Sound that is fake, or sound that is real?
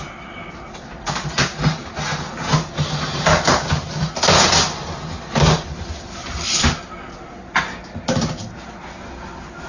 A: real